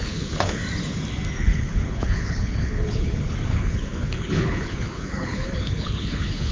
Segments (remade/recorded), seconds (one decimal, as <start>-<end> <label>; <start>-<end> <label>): 0.0-0.6 remade; 0.6-1.4 recorded; 1.4-6.5 remade